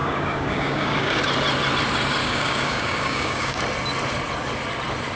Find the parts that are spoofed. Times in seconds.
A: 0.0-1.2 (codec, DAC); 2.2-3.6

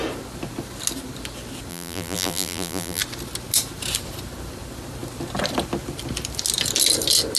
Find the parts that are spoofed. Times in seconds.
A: 1.7-3.0 (vocoder, BigVGAN v2)